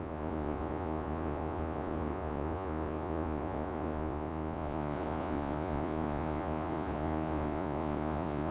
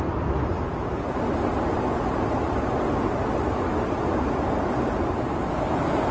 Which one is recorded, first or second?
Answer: second